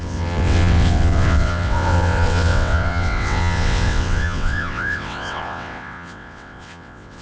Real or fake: fake